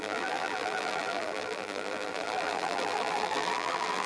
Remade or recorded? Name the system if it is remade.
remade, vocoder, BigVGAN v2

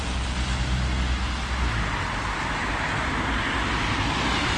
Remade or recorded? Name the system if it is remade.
recorded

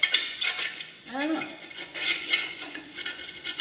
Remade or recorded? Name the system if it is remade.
remade, vocoder, Vocos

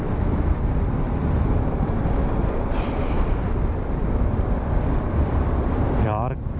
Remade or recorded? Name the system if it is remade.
remade, vocoder, BigVGAN v2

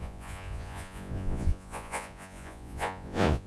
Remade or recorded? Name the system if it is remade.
remade, vocoder, Vocos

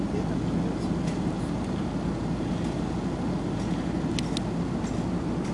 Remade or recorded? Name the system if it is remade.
recorded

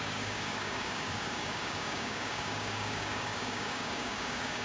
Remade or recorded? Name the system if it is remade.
remade, codec, DAC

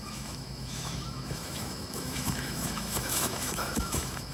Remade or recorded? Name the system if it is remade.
remade, autoencoder, DAC-VAE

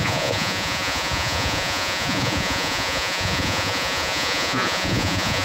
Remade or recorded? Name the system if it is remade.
remade, vocoder, Vocos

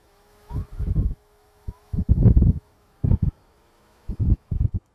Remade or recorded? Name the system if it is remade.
remade, autoencoder, DAC-VAE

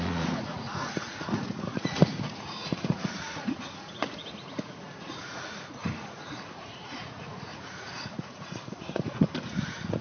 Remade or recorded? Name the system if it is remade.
remade, vocoder, Vocos